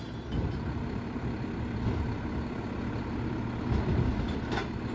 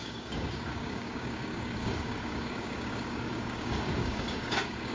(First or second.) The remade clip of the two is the second